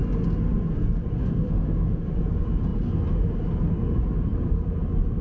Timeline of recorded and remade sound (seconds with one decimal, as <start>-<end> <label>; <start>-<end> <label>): 0.0-1.2 recorded; 1.2-2.1 remade; 2.1-5.2 recorded